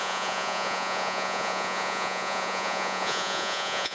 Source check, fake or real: fake